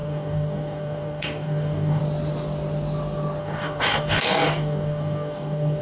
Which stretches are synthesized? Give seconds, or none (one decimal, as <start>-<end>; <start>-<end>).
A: 0.0-2.0; 3.4-5.8